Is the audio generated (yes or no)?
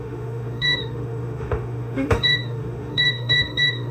yes